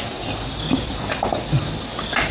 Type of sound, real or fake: real